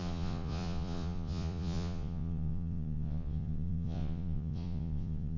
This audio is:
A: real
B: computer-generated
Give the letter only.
B